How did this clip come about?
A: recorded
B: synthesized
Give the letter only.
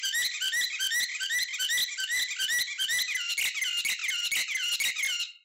A